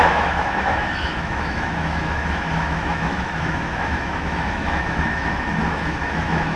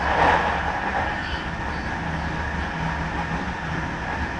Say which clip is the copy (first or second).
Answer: first